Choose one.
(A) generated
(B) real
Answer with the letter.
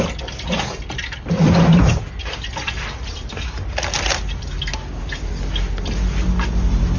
B